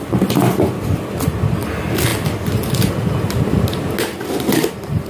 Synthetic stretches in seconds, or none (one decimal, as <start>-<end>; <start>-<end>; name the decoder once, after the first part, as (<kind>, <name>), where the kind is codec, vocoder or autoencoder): none